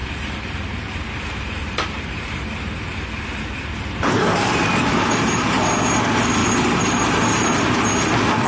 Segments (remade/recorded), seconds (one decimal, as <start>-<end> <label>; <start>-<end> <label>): 0.0-2.3 remade; 2.3-6.4 recorded; 6.4-7.8 remade; 7.8-8.5 recorded